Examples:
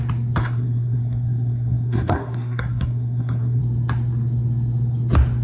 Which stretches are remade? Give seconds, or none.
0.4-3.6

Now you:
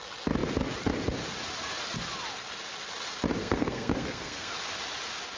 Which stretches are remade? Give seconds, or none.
3.4-4.5